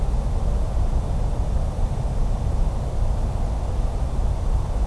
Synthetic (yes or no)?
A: no